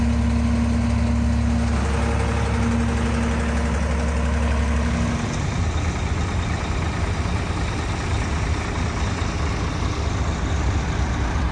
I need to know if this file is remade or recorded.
recorded